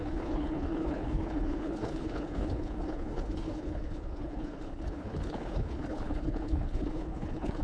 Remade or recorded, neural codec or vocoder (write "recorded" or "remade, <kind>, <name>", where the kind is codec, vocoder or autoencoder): remade, codec, HILCodec